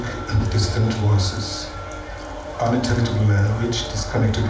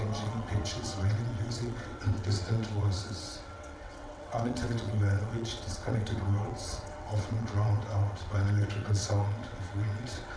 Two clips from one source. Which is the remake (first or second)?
second